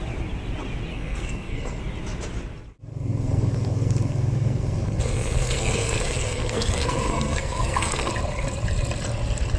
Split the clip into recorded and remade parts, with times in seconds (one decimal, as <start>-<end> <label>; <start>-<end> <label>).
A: 0.0-0.9 recorded; 0.9-1.8 remade; 1.8-2.9 recorded; 2.9-8.1 remade; 8.1-9.6 recorded